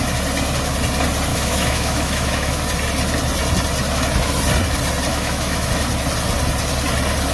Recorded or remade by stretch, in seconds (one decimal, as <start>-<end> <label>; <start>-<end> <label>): 0.0-1.3 recorded; 1.3-2.6 remade; 2.6-5.1 recorded; 5.1-5.7 remade; 5.7-7.3 recorded